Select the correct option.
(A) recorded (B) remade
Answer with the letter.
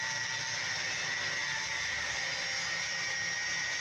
A